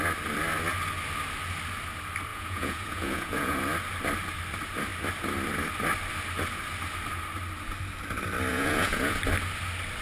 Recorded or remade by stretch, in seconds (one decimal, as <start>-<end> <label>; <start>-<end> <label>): 0.0-2.3 recorded; 2.3-3.6 remade; 3.6-8.5 recorded; 8.5-9.2 remade; 9.2-10.0 recorded